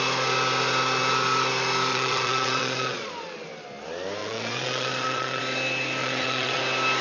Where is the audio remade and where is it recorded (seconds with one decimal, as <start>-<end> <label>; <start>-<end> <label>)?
0.0-1.9 recorded; 1.9-3.1 remade; 3.1-4.2 recorded; 4.2-5.4 remade; 5.4-6.0 recorded; 6.0-6.6 remade; 6.6-7.0 recorded